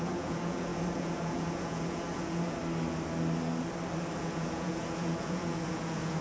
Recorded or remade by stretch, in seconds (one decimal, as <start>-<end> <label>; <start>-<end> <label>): 0.0-2.6 remade; 2.6-4.2 recorded; 4.2-6.2 remade